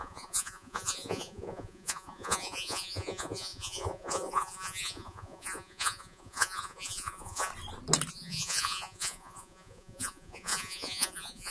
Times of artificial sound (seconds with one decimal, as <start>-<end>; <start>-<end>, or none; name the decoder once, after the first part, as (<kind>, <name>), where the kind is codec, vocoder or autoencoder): 0.0-7.5 (vocoder, Vocos); 8.1-11.5

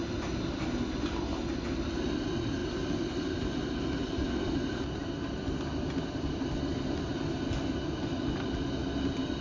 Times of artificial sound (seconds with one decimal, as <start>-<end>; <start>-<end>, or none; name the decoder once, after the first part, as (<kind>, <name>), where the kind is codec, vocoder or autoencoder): none